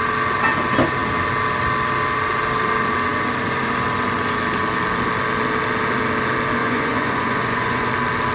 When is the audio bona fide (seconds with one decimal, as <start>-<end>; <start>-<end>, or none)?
0.0-6.6; 7.9-8.3